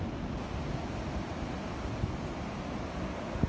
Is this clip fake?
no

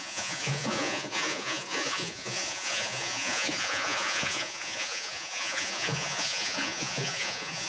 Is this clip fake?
yes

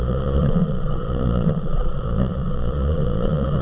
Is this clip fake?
yes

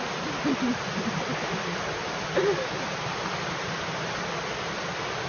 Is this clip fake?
no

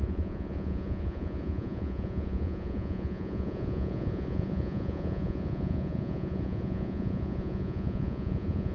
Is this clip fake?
yes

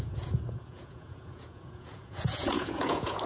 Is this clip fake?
yes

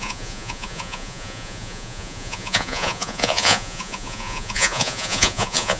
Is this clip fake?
yes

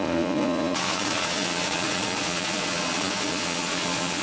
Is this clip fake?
yes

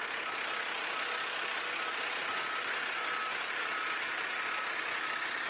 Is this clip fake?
no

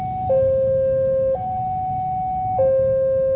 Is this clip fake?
no